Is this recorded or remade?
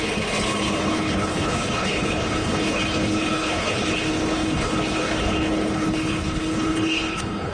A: remade